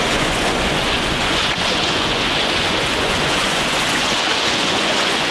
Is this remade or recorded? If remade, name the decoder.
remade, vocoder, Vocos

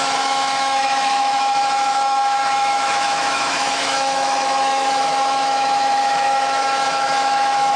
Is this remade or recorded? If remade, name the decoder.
remade, autoencoder, DAC-VAE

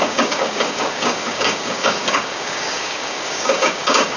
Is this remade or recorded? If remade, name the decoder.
remade, codec, DAC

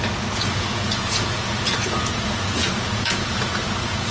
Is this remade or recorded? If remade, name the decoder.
remade, vocoder, Vocos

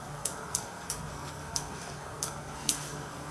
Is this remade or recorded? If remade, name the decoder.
remade, codec, SNAC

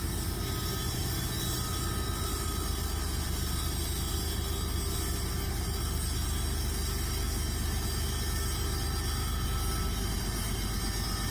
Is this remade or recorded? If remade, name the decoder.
recorded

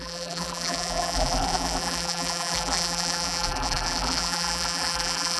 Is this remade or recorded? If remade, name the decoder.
remade, vocoder, BigVGAN v2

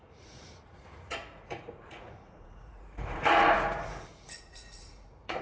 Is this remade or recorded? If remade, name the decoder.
remade, vocoder, Vocos